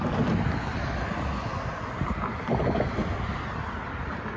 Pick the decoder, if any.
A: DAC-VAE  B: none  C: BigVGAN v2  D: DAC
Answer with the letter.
B